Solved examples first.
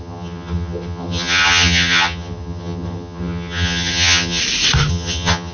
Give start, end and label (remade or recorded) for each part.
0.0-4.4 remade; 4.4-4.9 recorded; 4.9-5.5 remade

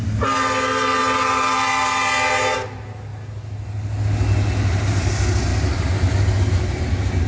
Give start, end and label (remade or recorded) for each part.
0.0-7.3 recorded

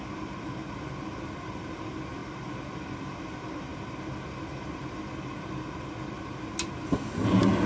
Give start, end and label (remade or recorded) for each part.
0.0-7.7 recorded

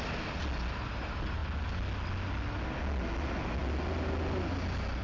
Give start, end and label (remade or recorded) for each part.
0.0-5.0 recorded